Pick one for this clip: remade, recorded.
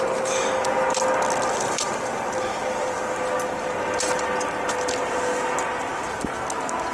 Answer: recorded